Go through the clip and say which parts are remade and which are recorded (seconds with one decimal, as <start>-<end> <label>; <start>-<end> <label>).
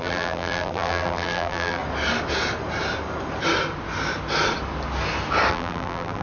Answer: 0.0-1.8 remade; 1.8-5.5 recorded; 5.5-6.2 remade